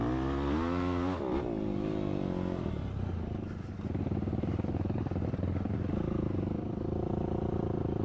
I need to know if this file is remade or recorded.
recorded